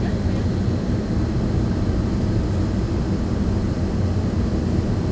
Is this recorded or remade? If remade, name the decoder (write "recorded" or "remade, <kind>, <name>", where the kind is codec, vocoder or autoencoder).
recorded